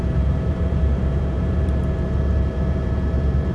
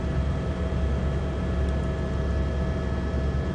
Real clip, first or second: second